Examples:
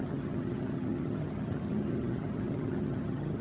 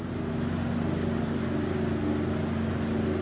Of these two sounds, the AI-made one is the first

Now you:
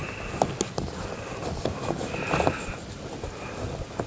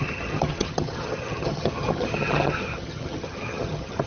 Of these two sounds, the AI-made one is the second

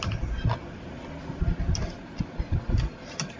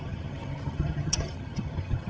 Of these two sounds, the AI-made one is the second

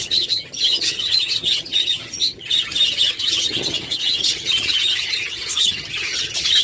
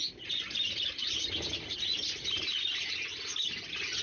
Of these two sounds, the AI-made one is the first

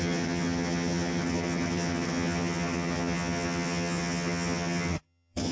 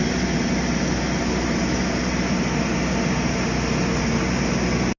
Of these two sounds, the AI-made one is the first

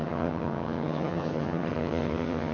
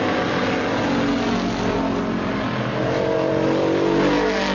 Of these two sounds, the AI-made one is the first